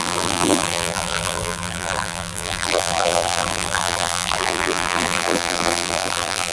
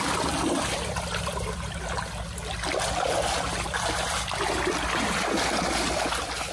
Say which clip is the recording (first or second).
second